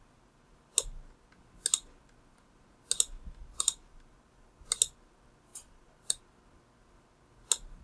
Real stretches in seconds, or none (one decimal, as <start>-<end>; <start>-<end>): 0.0-3.4; 4.7-5.5; 6.2-7.8